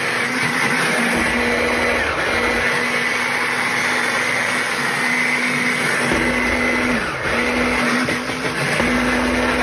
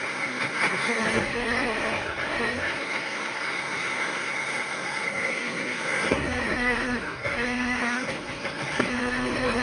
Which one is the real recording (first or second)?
first